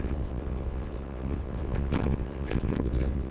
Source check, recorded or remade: remade